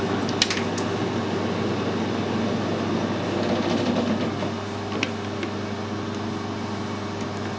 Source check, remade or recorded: recorded